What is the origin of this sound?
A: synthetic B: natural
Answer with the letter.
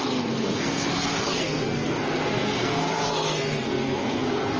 A